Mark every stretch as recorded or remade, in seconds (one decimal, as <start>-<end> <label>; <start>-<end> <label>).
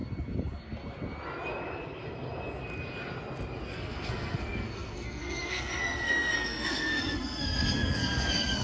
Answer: 0.0-3.7 recorded; 3.7-8.6 remade